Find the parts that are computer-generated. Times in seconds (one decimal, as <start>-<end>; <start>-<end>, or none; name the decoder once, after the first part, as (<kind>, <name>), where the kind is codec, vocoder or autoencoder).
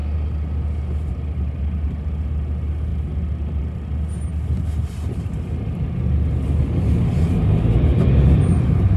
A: none